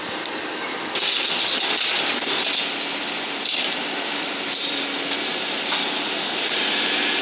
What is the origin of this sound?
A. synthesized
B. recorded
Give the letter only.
B